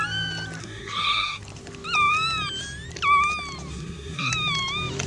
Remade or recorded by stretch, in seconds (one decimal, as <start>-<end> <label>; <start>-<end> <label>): 0.0-0.6 recorded; 0.6-1.4 remade; 1.4-3.7 recorded; 3.7-4.3 remade; 4.3-5.1 recorded